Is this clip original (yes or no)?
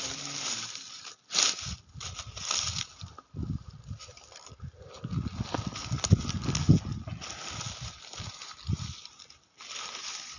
yes